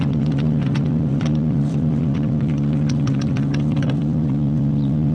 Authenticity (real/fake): fake